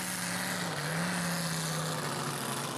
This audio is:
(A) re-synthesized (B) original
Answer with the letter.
B